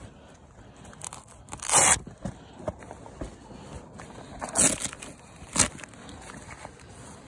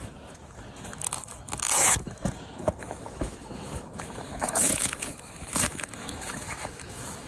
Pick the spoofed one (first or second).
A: second